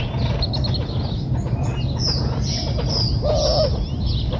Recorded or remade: recorded